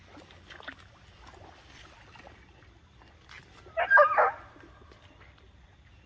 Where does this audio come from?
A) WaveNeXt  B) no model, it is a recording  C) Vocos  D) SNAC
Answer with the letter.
B